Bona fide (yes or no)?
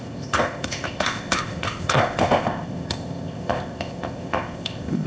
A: no